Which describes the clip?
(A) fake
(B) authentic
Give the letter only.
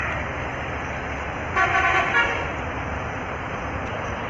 A